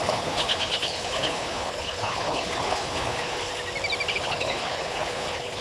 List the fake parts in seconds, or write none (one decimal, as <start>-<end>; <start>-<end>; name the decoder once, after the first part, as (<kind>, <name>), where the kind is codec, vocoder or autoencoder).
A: 0.0-3.5 (codec, HILCodec); 4.1-5.6